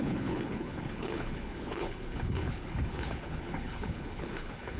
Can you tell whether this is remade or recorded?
remade